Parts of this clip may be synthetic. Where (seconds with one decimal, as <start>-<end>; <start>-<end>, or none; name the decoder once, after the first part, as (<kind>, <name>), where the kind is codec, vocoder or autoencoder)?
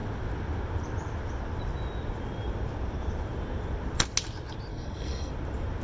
4.7-5.3 (codec, SNAC)